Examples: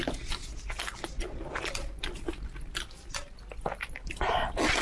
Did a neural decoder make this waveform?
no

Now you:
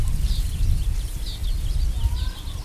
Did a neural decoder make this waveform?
no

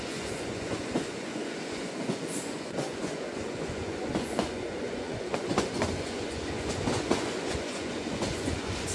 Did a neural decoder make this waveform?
yes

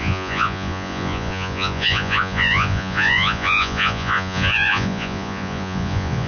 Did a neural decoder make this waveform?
yes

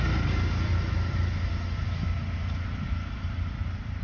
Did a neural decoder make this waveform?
no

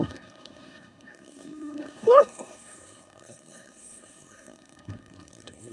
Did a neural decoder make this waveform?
yes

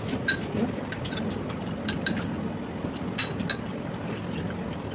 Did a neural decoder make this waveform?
no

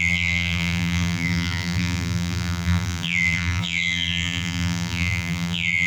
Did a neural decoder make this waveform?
yes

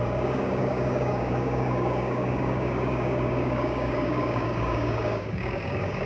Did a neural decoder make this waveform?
yes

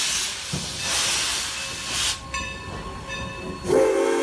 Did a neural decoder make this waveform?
no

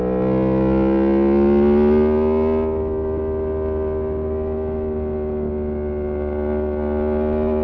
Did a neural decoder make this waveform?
no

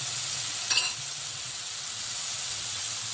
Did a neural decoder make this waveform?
yes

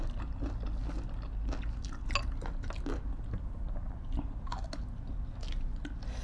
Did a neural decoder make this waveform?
no